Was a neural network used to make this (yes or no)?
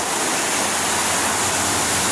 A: no